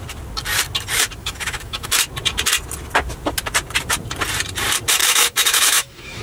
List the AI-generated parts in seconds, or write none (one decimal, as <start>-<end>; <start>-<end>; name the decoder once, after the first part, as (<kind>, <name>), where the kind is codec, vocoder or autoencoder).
1.2-1.9 (autoencoder, DAC-VAE); 5.0-6.2